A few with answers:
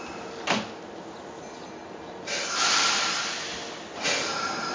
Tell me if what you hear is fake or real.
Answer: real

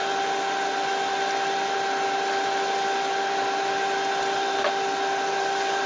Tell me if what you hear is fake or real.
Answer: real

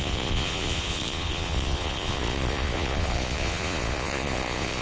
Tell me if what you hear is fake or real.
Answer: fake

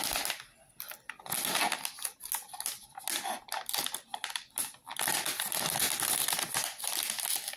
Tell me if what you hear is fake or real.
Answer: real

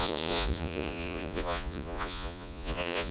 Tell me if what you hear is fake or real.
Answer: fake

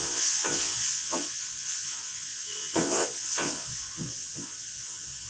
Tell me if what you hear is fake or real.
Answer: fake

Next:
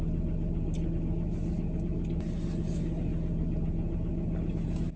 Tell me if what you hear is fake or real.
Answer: real